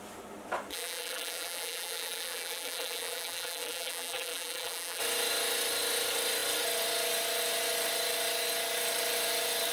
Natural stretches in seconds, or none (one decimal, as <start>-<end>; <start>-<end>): 0.0-0.7; 5.0-9.7